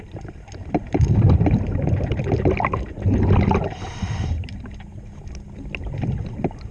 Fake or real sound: real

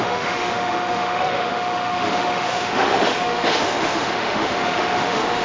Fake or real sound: fake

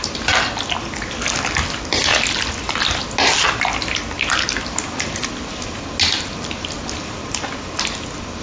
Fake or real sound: real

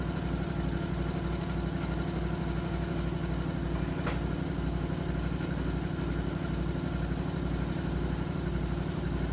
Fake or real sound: real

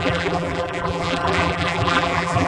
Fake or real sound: fake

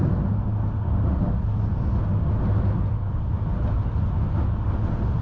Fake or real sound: real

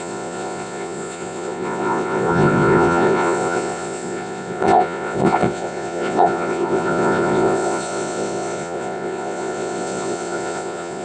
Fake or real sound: fake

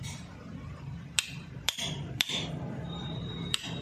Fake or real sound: fake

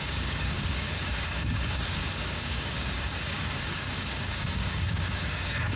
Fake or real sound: fake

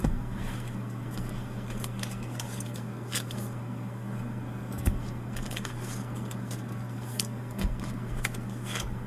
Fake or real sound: fake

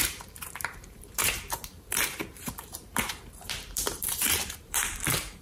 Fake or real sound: fake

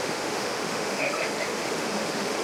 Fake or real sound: fake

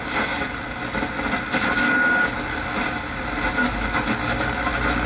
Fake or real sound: real